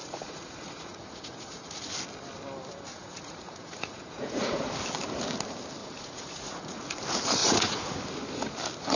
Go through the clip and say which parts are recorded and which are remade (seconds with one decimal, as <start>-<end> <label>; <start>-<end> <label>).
0.0-1.9 remade; 1.9-2.9 recorded; 2.9-4.7 remade; 4.7-5.8 recorded; 5.8-6.8 remade; 6.8-7.4 recorded; 7.4-8.0 remade; 8.0-9.0 recorded